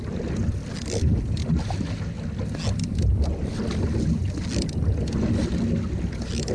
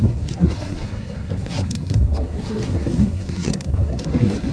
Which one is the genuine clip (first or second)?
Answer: first